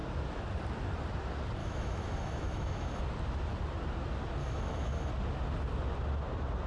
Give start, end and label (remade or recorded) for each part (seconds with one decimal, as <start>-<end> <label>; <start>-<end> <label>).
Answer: 0.0-1.6 recorded; 1.6-3.0 remade; 3.0-4.4 recorded; 4.4-5.1 remade; 5.1-6.7 recorded